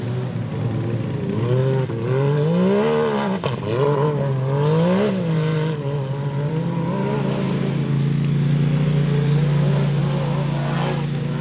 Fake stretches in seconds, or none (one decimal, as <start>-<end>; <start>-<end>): none